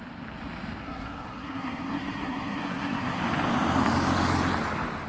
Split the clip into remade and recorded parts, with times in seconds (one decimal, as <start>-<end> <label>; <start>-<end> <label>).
0.0-0.8 recorded; 0.8-3.2 remade; 3.2-5.1 recorded